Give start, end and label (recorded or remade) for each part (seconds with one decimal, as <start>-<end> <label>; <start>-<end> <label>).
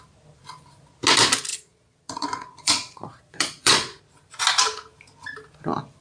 0.0-1.5 recorded; 1.5-4.0 remade; 4.0-6.0 recorded